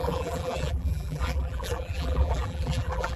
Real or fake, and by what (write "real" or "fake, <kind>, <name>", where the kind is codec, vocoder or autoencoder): fake, vocoder, BigVGAN v2